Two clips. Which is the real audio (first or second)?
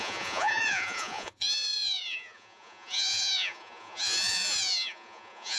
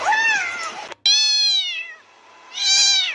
second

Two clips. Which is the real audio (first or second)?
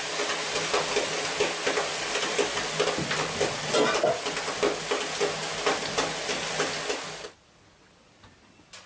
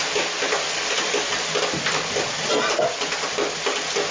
first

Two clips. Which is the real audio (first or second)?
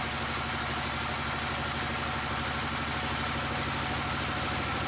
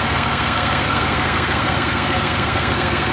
first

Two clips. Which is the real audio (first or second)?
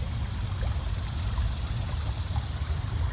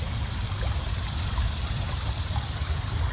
first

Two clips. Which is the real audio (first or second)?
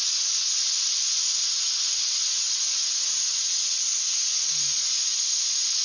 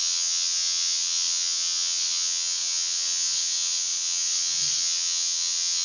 first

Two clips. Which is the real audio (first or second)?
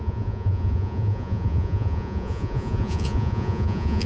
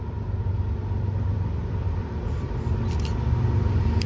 second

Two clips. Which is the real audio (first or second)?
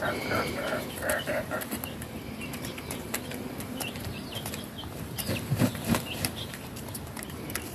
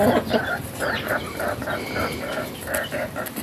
second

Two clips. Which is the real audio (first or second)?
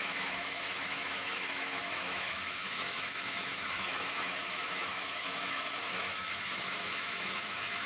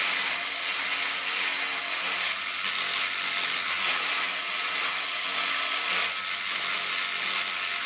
second